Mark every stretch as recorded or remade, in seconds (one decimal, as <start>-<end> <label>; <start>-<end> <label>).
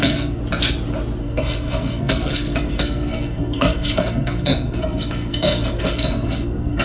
0.0-0.4 remade; 0.4-1.2 recorded; 1.2-6.8 remade